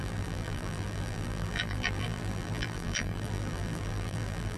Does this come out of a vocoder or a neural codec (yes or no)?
yes